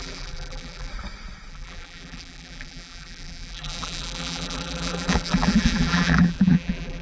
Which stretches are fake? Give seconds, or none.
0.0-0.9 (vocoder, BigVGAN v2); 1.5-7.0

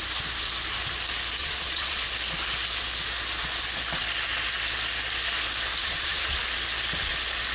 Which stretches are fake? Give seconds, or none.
1.4-2.0 (vocoder, Vocos); 5.8-6.4